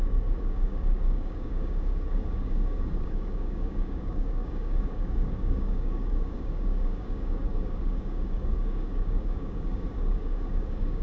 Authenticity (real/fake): fake